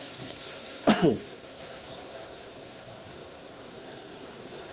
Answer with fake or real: fake